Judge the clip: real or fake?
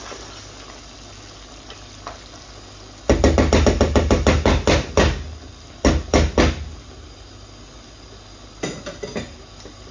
real